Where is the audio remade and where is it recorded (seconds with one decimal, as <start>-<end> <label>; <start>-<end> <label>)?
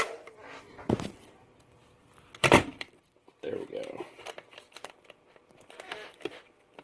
0.0-1.8 recorded; 1.8-4.2 remade; 4.2-6.8 recorded